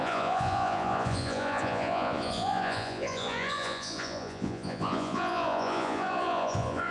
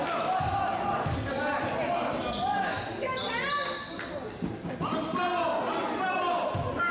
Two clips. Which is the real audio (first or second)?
second